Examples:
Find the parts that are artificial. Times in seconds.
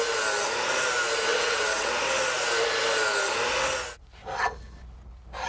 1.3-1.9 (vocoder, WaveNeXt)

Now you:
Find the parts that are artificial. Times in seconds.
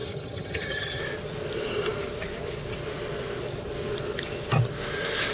0.0-1.0 (vocoder, HiFi-GAN)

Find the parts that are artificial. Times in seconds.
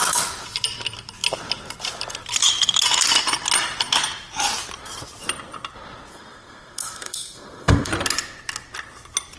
6.1-7.9 (codec, SNAC)